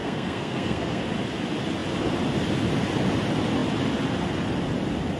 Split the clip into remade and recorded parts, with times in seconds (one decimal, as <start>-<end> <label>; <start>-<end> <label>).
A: 0.0-1.0 remade; 1.0-5.2 recorded